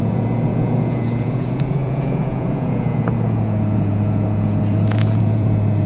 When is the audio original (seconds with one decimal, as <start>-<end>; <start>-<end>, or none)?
none